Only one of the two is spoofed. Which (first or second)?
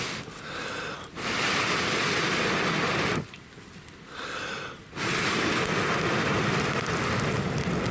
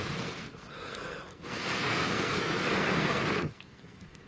second